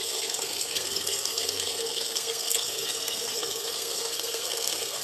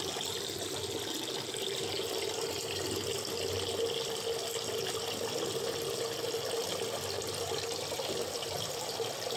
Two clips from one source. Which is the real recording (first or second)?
second